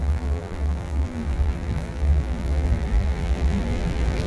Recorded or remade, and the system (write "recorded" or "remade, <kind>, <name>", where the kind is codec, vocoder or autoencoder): remade, vocoder, BigVGAN v2